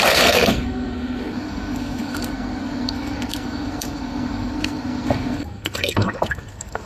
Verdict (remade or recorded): remade